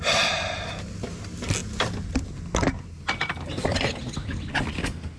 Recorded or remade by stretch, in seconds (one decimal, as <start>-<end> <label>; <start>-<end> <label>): 0.0-5.2 recorded